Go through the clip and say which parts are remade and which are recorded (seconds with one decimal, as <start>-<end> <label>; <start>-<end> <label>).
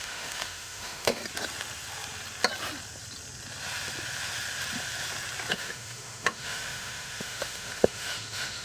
0.0-1.2 remade; 1.2-5.5 recorded; 5.5-8.6 remade